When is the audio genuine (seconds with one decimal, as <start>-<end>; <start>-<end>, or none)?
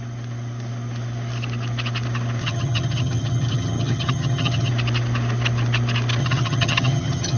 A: 0.0-2.4; 4.7-6.2